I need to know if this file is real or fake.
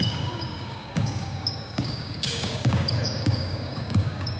fake